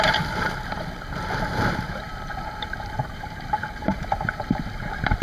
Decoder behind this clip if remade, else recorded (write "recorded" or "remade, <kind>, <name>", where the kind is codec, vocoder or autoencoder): remade, vocoder, BigVGAN v2